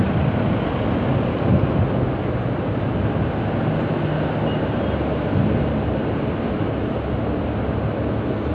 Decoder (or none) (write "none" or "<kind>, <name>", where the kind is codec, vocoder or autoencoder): none